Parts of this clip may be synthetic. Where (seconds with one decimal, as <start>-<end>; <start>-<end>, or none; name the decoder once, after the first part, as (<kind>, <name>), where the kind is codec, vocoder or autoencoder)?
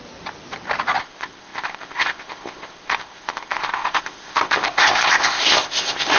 1.0-6.2 (codec, ZipCodec)